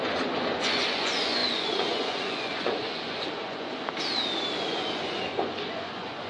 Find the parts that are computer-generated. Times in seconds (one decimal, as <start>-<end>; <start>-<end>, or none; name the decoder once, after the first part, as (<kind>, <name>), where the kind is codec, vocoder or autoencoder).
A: 0.0-3.7 (vocoder, Vocos); 4.6-6.3